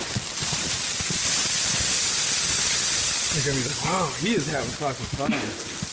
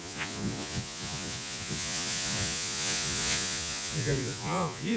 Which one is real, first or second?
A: first